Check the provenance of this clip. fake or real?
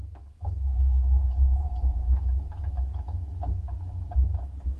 fake